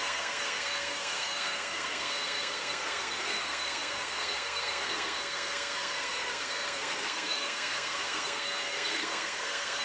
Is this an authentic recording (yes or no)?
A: no